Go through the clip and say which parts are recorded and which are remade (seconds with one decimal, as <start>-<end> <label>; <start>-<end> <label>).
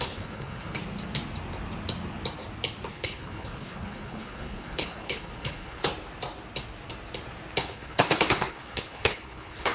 0.0-0.8 remade; 0.8-2.9 recorded; 2.9-5.9 remade; 5.9-7.6 recorded; 7.6-9.7 remade